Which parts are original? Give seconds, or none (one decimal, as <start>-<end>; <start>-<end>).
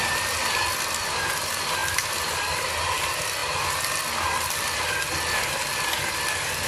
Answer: 0.0-6.7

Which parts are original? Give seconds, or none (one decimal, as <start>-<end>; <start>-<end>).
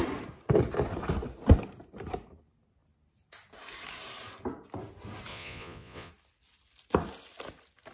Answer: 0.0-5.3; 6.1-7.9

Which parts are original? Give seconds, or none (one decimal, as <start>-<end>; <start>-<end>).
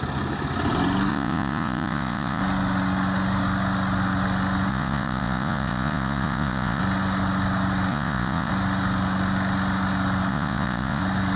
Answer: 0.0-1.1; 2.4-4.7; 6.8-7.9; 8.5-10.3; 11.0-11.4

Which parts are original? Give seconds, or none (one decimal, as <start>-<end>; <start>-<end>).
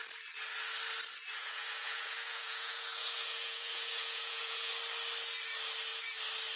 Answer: 0.0-1.4; 4.7-6.6